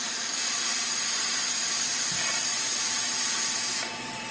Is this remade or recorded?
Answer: remade